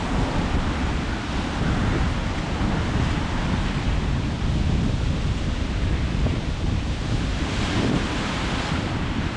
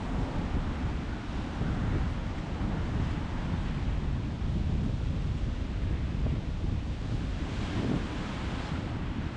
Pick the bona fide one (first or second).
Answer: second